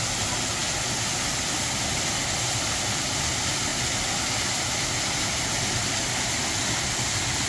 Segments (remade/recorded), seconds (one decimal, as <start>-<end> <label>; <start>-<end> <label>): 0.0-7.5 recorded